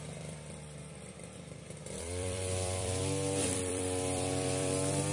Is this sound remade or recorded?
remade